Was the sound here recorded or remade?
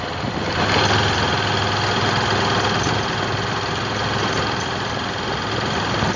recorded